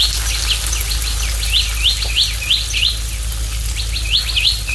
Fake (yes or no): no